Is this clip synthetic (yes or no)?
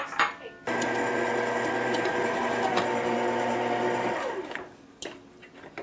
no